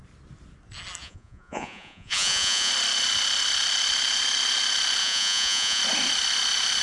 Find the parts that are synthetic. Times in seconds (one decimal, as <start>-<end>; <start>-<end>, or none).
1.0-2.7; 5.0-5.8